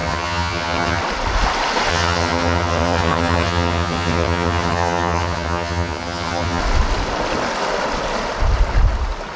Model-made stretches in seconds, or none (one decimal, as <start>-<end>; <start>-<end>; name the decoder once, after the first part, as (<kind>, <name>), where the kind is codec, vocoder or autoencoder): 0.0-1.0 (vocoder, HiFi-GAN); 1.9-6.6